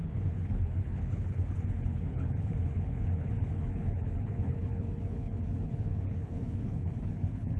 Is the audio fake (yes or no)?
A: yes